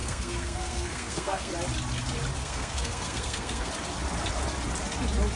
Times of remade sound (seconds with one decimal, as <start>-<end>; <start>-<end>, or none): 0.0-1.5; 2.4-3.7